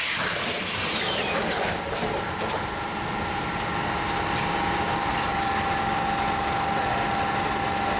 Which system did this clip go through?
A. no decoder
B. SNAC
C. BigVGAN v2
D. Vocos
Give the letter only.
A